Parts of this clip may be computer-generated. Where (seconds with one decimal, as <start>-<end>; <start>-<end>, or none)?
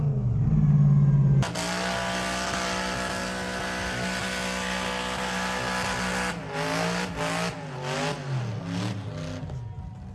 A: none